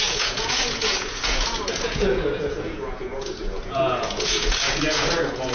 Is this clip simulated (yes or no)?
yes